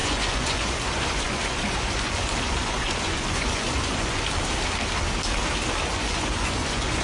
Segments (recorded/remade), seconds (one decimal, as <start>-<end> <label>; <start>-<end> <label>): 0.0-4.2 remade; 4.2-5.9 recorded; 5.9-7.0 remade